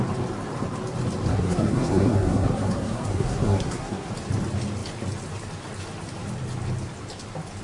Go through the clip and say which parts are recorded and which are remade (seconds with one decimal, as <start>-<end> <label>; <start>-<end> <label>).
0.0-1.3 recorded; 1.3-4.1 remade; 4.1-7.6 recorded